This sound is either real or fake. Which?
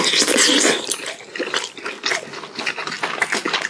real